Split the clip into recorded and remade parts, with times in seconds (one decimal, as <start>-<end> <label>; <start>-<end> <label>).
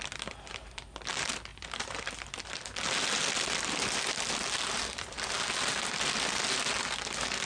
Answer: 0.0-7.5 recorded